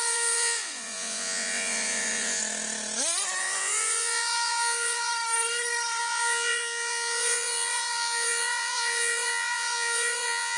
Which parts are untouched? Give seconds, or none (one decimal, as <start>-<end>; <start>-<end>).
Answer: 2.4-3.4; 5.1-6.0